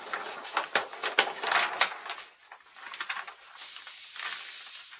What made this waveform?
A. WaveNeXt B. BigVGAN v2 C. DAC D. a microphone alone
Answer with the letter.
D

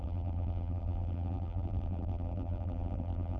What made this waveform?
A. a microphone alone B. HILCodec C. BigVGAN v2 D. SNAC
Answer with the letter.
C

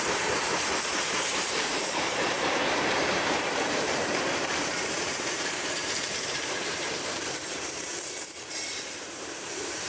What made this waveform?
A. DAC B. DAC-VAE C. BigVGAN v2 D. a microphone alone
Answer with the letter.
C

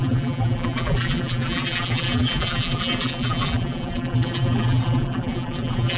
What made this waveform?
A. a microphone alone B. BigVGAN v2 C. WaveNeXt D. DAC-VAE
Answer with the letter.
B